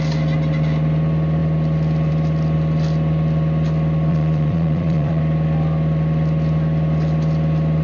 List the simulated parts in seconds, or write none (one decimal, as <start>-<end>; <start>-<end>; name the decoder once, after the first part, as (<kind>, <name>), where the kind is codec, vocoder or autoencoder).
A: 4.1-5.2 (vocoder, Vocos)